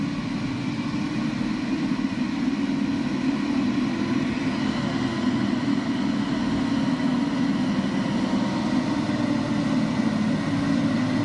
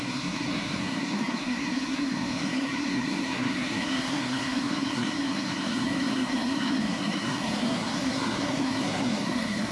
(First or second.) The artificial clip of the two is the second